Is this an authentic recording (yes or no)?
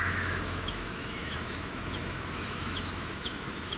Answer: no